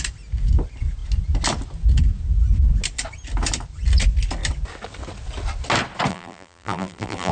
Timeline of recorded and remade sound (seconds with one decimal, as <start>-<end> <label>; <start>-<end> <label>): 0.0-6.1 recorded; 6.1-7.3 remade